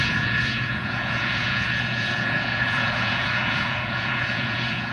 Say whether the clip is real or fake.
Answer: fake